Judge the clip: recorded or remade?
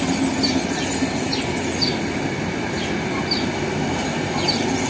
recorded